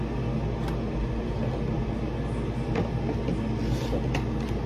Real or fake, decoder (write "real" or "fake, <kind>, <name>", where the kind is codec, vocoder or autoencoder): real